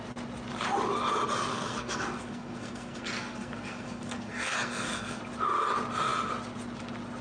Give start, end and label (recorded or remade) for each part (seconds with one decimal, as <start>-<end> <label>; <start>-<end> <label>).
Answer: 0.0-1.5 recorded; 1.5-5.2 remade; 5.2-7.2 recorded